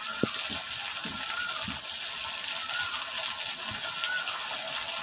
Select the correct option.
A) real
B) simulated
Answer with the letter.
A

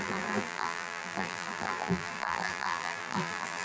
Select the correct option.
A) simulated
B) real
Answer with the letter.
A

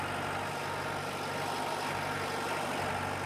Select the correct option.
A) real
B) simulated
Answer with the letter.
A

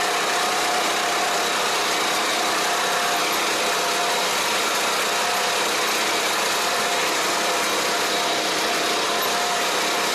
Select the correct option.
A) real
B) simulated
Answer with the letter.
A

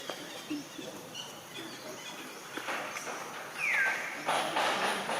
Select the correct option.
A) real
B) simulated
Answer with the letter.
B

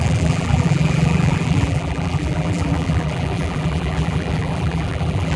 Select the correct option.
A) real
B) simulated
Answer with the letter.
B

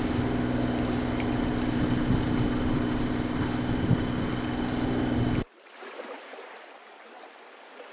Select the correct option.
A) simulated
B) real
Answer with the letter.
B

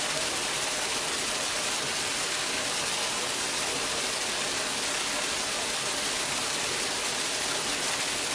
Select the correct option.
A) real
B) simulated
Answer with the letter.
A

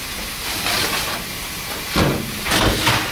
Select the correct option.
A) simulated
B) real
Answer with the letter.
B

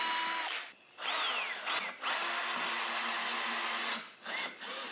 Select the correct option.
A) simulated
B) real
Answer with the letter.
B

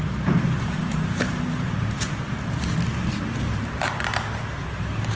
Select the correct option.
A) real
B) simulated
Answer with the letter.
B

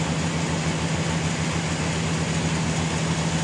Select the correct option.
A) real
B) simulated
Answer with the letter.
A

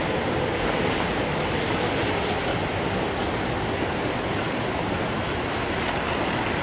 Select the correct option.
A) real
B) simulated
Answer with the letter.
A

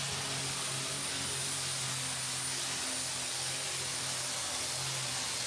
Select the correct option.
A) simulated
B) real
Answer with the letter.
B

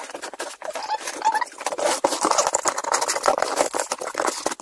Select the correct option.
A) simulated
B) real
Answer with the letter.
B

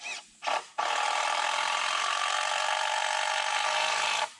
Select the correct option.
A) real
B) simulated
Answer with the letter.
B